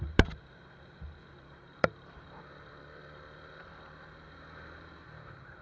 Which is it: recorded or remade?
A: remade